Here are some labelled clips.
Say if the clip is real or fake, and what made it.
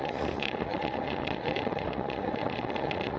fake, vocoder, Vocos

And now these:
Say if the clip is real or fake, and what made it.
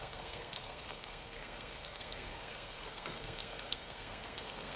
fake, codec, SNAC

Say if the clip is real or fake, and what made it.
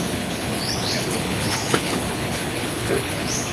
fake, codec, HILCodec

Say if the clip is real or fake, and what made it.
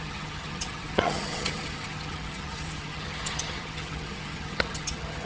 fake, vocoder, HiFi-GAN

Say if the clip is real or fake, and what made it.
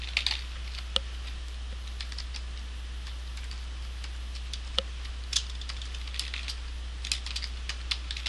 real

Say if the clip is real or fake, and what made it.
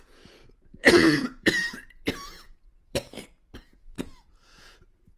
fake, vocoder, Vocos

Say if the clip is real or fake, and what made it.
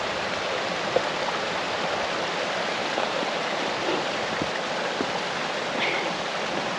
fake, vocoder, BigVGAN v2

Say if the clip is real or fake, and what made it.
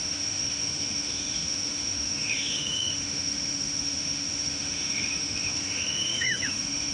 fake, autoencoder, DAC-VAE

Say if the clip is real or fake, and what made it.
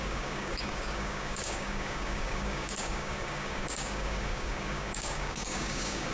fake, codec, DAC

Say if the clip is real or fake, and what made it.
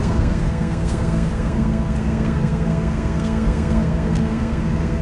fake, codec, SNAC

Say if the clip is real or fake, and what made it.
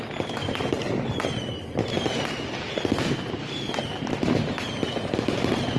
real